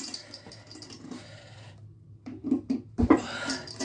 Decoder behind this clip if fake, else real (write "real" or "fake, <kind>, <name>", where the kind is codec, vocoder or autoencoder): fake, vocoder, BigVGAN v2